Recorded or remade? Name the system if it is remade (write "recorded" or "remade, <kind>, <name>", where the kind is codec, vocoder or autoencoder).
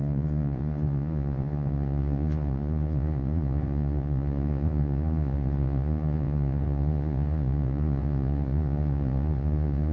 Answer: remade, vocoder, Vocos